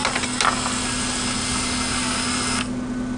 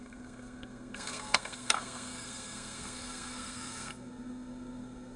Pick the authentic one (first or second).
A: first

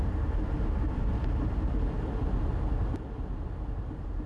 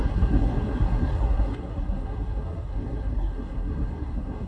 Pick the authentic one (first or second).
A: first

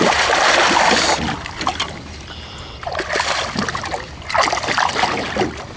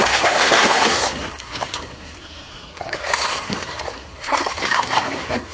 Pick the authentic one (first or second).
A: first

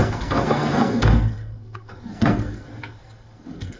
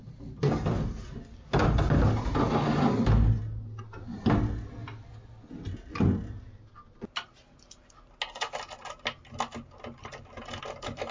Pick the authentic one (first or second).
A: second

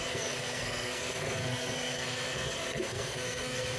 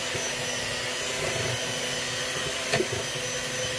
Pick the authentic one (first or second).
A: second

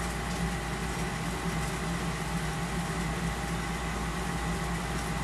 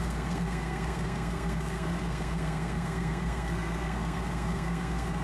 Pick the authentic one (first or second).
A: first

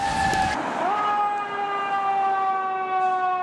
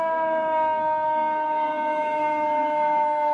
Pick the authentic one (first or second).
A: first